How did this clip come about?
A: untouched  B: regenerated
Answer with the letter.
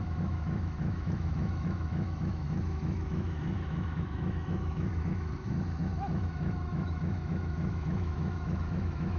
B